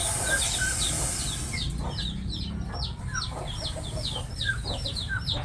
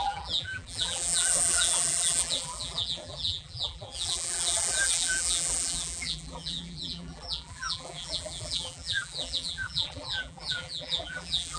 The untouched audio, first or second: first